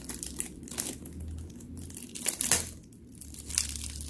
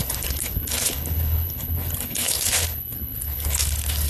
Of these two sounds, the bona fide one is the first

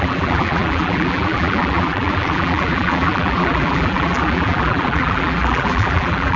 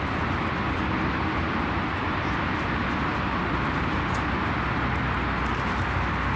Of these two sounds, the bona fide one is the second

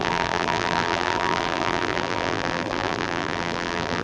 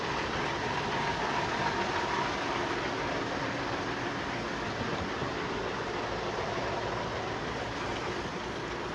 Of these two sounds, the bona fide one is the second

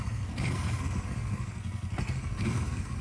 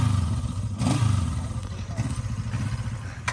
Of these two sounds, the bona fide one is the second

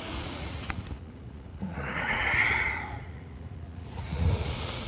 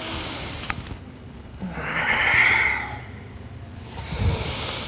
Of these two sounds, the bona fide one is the second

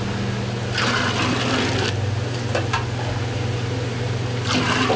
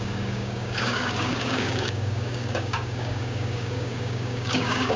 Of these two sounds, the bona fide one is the first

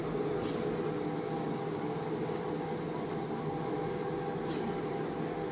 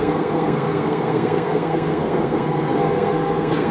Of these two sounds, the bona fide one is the first